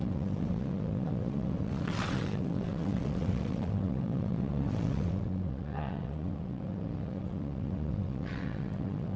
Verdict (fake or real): fake